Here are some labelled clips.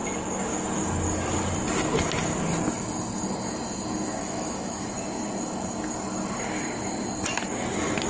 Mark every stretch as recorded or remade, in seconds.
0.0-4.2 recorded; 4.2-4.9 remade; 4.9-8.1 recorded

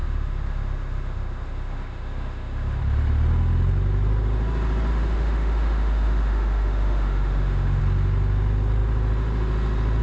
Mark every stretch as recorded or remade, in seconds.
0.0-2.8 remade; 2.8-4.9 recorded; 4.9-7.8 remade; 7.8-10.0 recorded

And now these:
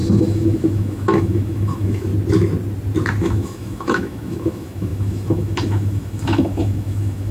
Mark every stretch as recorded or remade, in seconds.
0.0-2.1 remade; 2.1-3.2 recorded; 3.2-7.3 remade

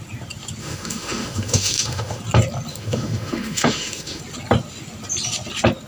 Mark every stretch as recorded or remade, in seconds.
0.0-0.6 recorded; 0.6-2.2 remade; 2.2-2.7 recorded; 2.7-4.2 remade; 4.2-5.9 recorded

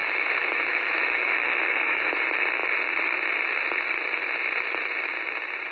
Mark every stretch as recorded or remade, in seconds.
0.0-2.1 remade; 2.1-5.7 recorded

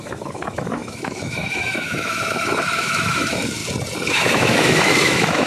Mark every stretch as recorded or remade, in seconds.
0.0-3.6 remade; 3.6-4.1 recorded; 4.1-5.5 remade

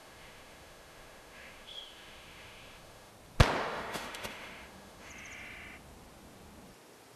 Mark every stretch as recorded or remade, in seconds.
0.0-3.1 remade; 3.1-3.6 recorded; 3.6-5.1 remade; 5.1-7.2 recorded